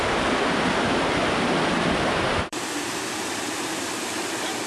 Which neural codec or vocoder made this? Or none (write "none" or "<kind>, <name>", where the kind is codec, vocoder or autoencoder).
vocoder, BigVGAN v2